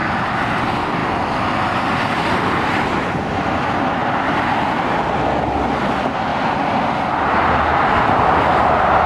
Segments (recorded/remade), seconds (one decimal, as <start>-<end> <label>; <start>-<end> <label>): 0.0-0.6 remade; 0.6-1.0 recorded; 1.0-2.8 remade; 2.8-4.0 recorded; 4.0-5.6 remade; 5.6-6.3 recorded; 6.3-7.1 remade; 7.1-9.1 recorded

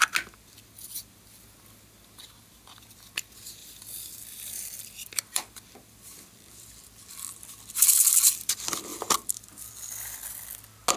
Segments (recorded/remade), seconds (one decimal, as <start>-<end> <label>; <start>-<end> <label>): 0.0-3.6 recorded; 3.6-7.1 remade; 7.1-8.9 recorded; 8.9-9.7 remade; 9.7-11.0 recorded

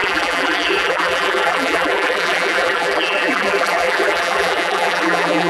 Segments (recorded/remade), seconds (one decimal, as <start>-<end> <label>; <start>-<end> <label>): 0.0-5.5 remade

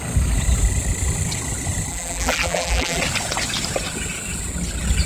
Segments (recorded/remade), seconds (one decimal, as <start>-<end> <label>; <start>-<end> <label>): 0.0-1.9 recorded; 1.9-3.0 remade; 3.0-5.1 recorded